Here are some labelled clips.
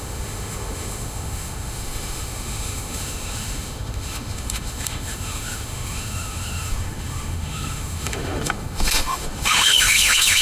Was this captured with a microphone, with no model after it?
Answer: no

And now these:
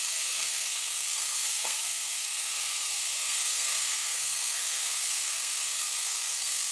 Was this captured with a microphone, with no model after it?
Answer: no